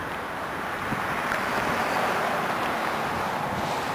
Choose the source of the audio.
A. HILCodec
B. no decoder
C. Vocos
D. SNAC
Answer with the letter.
B